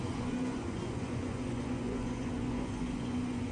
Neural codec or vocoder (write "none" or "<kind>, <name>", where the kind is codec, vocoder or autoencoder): vocoder, Vocos